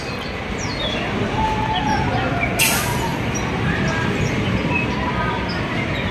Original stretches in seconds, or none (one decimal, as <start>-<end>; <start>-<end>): 0.0-3.1; 4.7-6.1